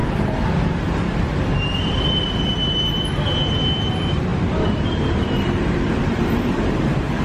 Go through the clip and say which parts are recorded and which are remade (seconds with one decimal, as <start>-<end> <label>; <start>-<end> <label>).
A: 0.0-7.2 recorded